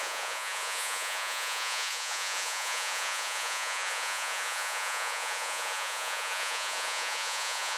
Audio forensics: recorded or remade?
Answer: remade